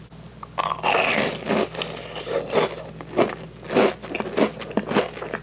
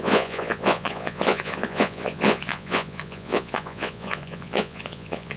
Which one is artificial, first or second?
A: second